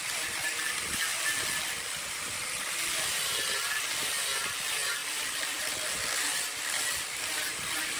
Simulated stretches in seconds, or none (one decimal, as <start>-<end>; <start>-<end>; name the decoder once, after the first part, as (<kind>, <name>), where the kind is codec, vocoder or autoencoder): none